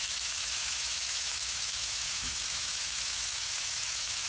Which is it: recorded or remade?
remade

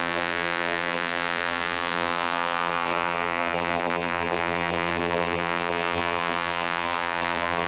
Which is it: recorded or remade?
remade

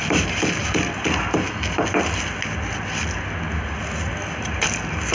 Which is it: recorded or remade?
recorded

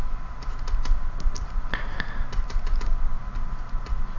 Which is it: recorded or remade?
remade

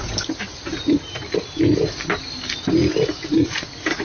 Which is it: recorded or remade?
recorded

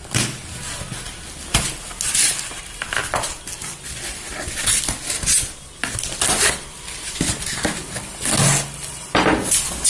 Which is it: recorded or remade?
recorded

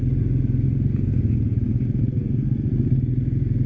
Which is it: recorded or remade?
recorded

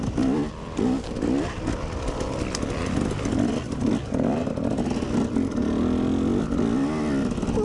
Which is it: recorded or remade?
recorded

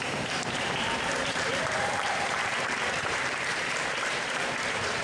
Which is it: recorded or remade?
remade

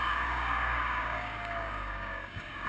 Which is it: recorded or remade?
remade